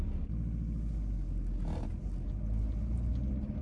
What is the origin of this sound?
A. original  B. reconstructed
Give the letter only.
A